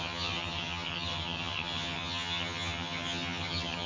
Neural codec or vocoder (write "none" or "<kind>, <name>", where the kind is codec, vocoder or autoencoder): vocoder, HiFi-GAN